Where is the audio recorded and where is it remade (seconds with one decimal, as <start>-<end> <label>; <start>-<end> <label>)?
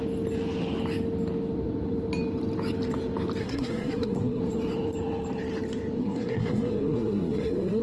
0.0-3.4 recorded; 3.4-4.4 remade; 4.4-6.0 recorded; 6.0-7.8 remade